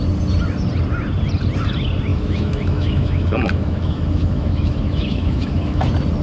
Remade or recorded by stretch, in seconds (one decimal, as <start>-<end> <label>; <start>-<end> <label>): 0.0-2.1 recorded; 2.1-5.8 remade; 5.8-6.2 recorded